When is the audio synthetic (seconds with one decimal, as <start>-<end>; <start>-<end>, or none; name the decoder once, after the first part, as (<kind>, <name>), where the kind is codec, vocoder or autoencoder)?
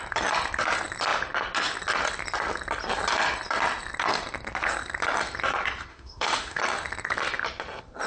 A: 5.9-6.6 (autoencoder, DAC-VAE)